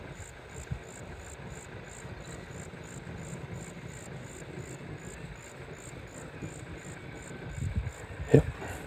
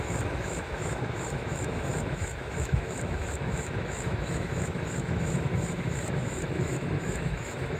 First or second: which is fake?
second